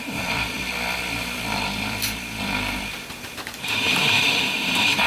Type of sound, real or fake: fake